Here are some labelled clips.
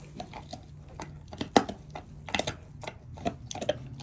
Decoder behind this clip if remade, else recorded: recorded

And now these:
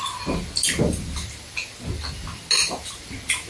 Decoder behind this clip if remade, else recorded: recorded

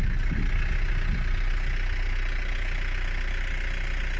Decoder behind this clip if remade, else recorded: recorded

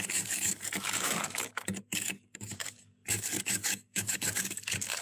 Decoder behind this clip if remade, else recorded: remade, codec, DAC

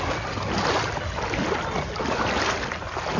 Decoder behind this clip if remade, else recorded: recorded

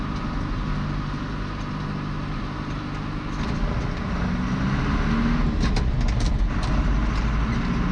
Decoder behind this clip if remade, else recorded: recorded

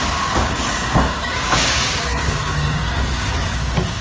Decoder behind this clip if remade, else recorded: remade, codec, DAC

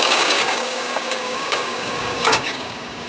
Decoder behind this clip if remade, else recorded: remade, codec, DAC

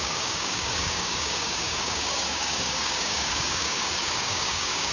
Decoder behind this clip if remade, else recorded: remade, codec, DAC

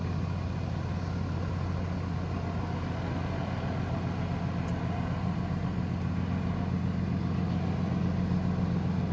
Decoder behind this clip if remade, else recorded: recorded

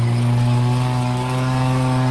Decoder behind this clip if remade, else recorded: remade, codec, DAC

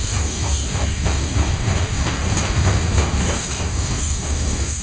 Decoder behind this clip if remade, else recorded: remade, codec, DAC